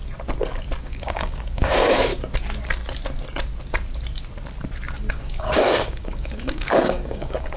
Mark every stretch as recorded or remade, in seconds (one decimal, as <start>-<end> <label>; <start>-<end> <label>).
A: 0.0-0.8 recorded; 0.8-2.1 remade; 2.1-5.1 recorded; 5.1-7.6 remade